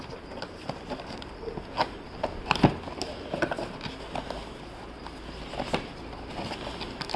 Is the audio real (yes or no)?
yes